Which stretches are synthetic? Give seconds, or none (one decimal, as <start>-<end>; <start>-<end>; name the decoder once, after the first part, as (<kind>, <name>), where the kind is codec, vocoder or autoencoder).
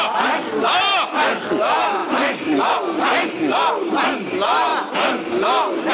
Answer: 2.0-2.7 (vocoder, BigVGAN v2); 3.2-3.7